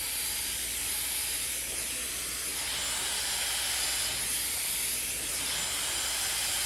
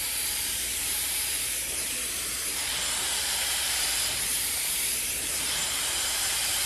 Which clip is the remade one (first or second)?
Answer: second